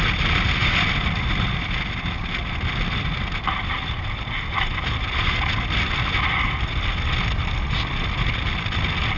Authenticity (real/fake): real